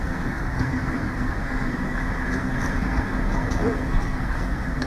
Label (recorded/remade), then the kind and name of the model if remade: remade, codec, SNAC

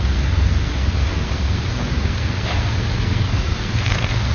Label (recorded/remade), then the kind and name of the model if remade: remade, codec, SNAC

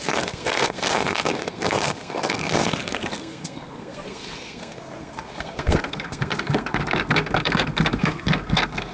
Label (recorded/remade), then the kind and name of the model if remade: remade, codec, SNAC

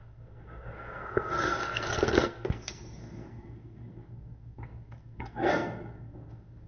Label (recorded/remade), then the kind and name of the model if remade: remade, codec, SNAC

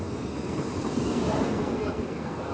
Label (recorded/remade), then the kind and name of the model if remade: remade, codec, SNAC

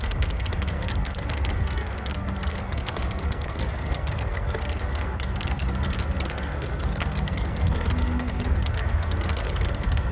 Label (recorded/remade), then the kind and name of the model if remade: remade, codec, SNAC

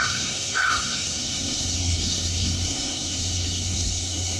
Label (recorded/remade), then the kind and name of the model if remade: remade, codec, SNAC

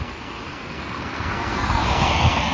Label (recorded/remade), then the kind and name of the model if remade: remade, codec, SNAC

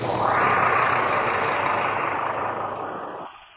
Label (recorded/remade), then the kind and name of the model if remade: recorded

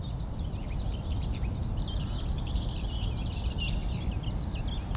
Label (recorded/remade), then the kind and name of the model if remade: recorded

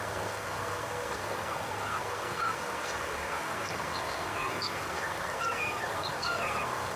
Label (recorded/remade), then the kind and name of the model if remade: remade, codec, SNAC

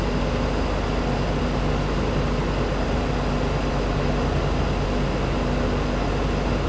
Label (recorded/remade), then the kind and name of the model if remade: recorded